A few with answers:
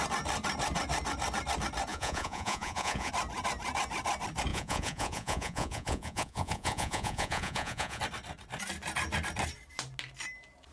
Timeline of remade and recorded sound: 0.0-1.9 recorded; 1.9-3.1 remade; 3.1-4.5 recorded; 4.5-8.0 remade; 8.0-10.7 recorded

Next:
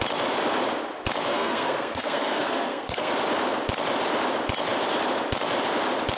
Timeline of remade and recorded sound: 0.0-1.3 recorded; 1.3-3.1 remade; 3.1-6.2 recorded

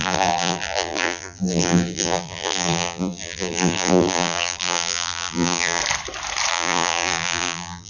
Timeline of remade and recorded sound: 0.0-5.8 remade; 5.8-6.5 recorded; 6.5-7.9 remade